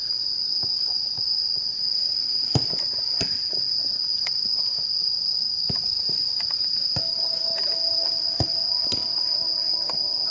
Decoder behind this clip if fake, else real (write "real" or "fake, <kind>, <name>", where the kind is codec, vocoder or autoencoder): real